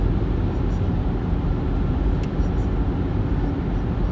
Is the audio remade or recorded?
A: recorded